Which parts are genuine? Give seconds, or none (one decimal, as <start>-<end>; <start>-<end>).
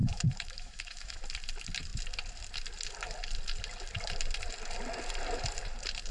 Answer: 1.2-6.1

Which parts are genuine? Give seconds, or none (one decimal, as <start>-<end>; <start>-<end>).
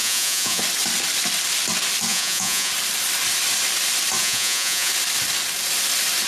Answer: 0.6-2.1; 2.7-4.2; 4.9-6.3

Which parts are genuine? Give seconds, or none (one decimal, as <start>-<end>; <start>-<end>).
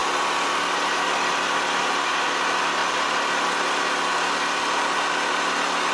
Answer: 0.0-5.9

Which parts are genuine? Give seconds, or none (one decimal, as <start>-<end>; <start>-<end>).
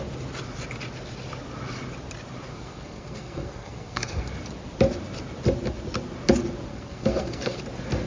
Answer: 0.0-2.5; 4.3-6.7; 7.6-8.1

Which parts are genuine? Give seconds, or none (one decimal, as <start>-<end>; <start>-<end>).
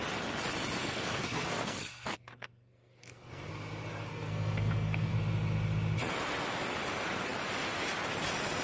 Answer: 0.0-0.8; 3.5-4.1; 5.1-8.6